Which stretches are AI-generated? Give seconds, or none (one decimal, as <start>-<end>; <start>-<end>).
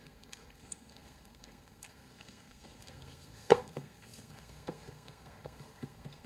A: 0.0-6.3